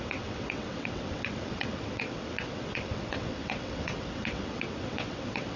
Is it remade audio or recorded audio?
remade